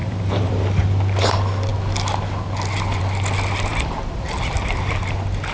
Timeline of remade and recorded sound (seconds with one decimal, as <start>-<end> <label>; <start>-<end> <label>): 0.0-0.5 remade; 0.5-5.5 recorded